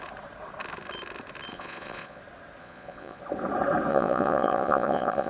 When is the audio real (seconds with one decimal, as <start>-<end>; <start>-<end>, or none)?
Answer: 0.0-1.5; 2.2-2.6; 3.2-3.9